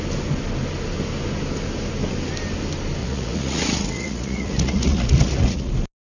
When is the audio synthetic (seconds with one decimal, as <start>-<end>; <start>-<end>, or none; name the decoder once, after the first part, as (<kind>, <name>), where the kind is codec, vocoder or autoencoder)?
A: 3.0-5.7 (vocoder, Vocos)